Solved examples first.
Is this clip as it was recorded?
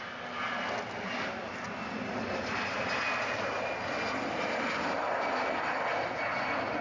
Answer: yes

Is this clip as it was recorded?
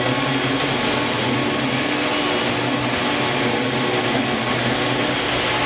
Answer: yes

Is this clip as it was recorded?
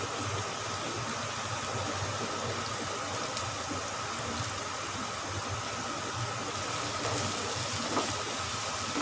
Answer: yes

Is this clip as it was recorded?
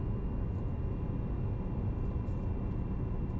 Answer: yes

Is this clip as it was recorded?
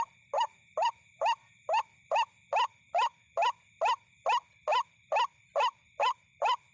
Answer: yes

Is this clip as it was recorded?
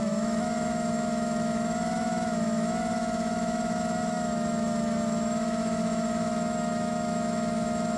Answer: no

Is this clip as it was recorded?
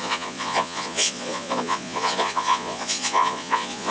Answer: no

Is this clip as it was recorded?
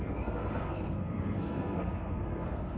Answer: no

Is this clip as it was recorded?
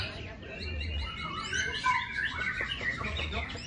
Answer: no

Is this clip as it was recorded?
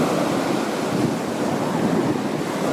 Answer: yes